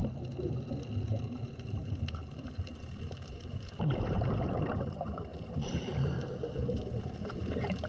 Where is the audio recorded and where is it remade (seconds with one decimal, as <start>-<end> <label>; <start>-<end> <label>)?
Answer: 0.0-1.1 recorded; 1.1-7.9 remade